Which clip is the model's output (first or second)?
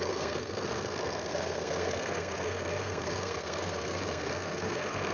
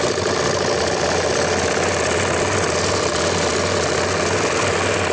first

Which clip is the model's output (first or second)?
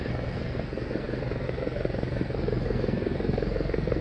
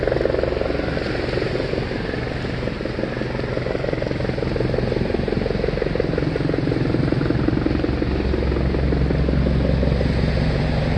first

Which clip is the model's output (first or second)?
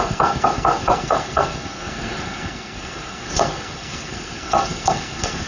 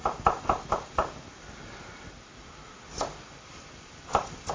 first